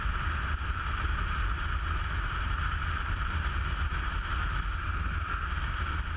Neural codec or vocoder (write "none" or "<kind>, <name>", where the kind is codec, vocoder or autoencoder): none